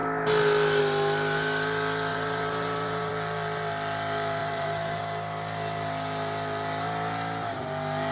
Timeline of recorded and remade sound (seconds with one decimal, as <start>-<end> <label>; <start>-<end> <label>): 0.0-2.1 recorded; 2.1-3.1 remade; 3.1-4.4 recorded; 4.4-5.0 remade; 5.0-8.1 recorded